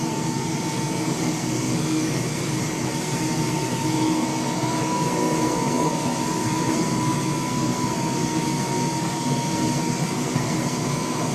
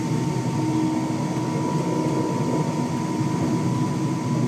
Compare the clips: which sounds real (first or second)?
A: second